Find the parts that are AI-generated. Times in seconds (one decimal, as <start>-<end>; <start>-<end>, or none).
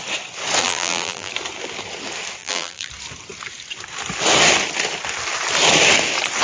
0.6-1.3; 2.4-2.9